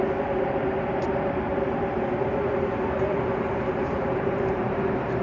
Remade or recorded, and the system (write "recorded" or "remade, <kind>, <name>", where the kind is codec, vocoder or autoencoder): remade, vocoder, BigVGAN v2